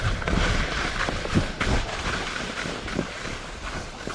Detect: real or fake real